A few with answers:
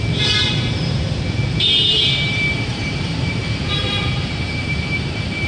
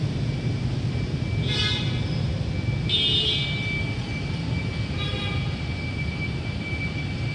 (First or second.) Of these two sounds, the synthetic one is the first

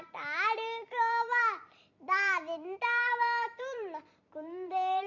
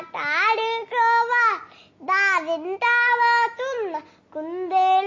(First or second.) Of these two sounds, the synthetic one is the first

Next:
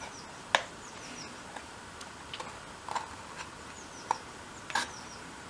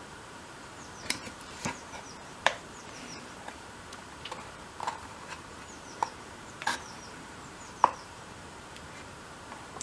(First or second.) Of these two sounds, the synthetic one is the second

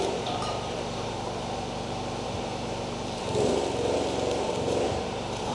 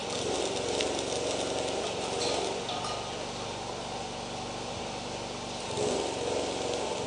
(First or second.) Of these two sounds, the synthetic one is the first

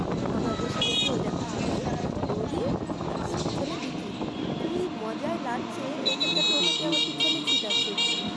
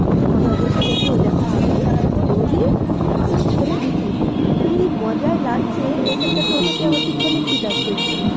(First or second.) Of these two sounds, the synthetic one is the second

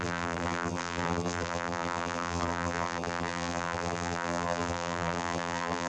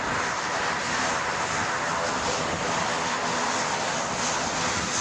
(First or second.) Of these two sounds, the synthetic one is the first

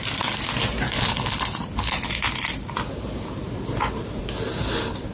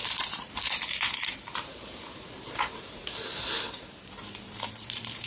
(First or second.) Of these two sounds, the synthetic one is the second